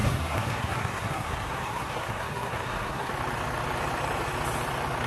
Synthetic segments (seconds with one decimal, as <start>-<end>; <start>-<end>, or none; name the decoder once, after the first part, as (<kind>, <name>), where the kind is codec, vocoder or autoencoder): 0.0-3.1 (codec, SNAC)